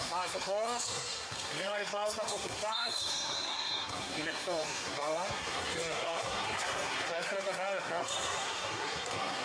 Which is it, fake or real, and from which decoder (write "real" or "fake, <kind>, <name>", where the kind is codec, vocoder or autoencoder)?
fake, codec, SNAC